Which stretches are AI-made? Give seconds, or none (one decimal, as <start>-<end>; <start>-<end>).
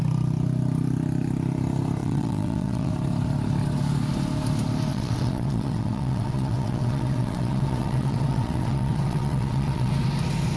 2.0-2.9; 4.9-9.9